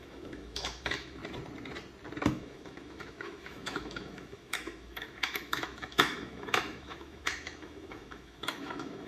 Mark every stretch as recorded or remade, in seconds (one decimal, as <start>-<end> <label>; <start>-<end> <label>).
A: 0.0-1.2 remade; 1.2-2.3 recorded; 2.3-9.1 remade

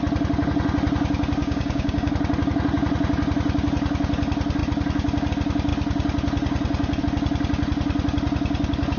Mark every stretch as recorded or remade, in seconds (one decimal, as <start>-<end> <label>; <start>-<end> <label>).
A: 0.0-1.4 recorded; 1.4-2.1 remade; 2.1-9.0 recorded

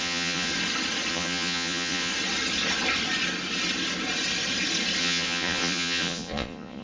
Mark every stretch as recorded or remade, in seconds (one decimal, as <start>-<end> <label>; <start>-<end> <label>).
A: 0.0-0.5 remade; 0.5-1.1 recorded; 1.1-2.1 remade; 2.1-5.0 recorded; 5.0-6.8 remade

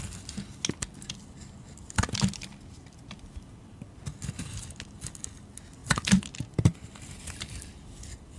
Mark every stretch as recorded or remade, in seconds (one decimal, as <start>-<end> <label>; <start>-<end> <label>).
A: 0.0-5.8 recorded; 5.8-7.4 remade; 7.4-8.4 recorded

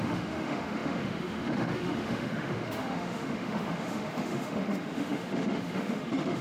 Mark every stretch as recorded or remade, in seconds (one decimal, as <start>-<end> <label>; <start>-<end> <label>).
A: 0.0-6.4 remade

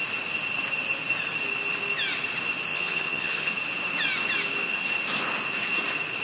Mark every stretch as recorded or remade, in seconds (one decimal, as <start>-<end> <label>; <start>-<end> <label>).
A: 0.0-2.7 recorded; 2.7-3.5 remade; 3.5-6.2 recorded

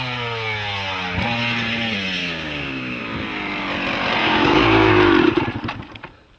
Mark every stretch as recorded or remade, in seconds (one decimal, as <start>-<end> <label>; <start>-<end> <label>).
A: 0.0-2.2 recorded; 2.2-3.0 remade; 3.0-4.2 recorded; 4.2-4.9 remade; 4.9-6.4 recorded

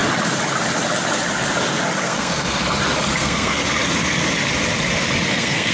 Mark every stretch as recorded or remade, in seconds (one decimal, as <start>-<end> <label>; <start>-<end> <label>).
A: 0.0-2.0 recorded; 2.0-2.6 remade; 2.6-3.2 recorded; 3.2-3.6 remade; 3.6-5.3 recorded; 5.3-5.7 remade